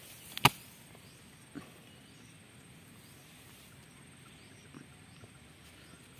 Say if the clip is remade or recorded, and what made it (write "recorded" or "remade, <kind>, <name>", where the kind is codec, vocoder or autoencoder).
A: recorded